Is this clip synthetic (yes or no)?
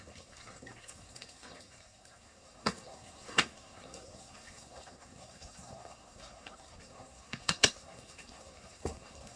yes